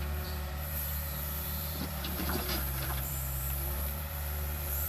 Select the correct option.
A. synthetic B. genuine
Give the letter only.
A